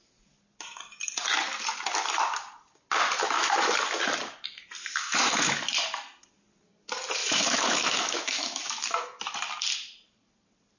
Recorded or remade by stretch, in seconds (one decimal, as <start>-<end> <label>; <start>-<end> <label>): 0.0-3.2 recorded; 3.2-3.7 remade; 3.7-4.8 recorded; 4.8-5.6 remade; 5.6-7.2 recorded; 7.2-9.2 remade; 9.2-10.8 recorded